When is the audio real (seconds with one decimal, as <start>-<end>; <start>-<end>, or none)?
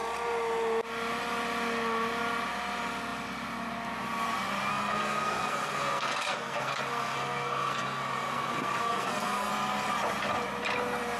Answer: 0.0-4.7; 9.5-11.2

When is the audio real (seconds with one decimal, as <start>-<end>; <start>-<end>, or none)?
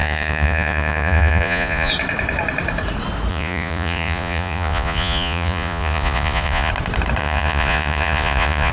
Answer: 1.9-3.3; 6.7-7.2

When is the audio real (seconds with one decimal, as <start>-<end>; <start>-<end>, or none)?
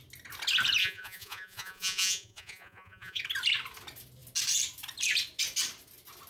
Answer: 0.0-0.8; 3.2-6.3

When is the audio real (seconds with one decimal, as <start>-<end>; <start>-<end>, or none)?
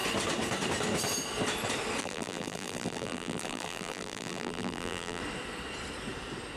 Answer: 0.0-2.0; 5.2-6.6